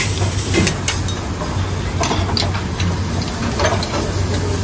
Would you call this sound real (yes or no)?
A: yes